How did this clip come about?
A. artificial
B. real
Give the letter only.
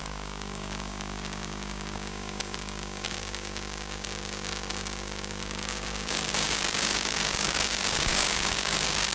A